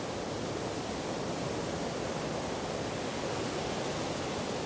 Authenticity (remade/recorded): recorded